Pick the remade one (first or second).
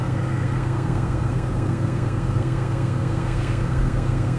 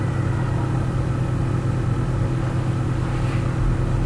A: first